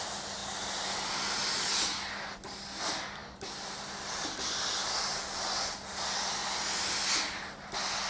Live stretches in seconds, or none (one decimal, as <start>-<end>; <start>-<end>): 0.0-8.1